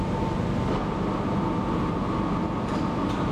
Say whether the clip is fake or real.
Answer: real